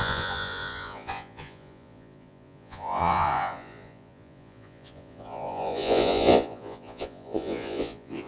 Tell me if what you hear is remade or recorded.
remade